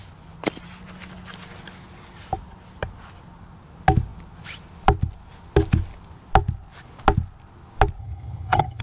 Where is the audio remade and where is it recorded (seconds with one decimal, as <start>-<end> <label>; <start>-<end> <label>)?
0.0-8.0 recorded; 8.0-8.8 remade